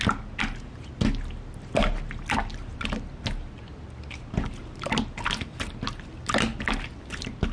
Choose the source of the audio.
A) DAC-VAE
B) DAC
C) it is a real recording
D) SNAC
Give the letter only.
C